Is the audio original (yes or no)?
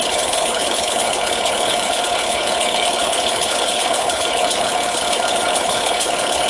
no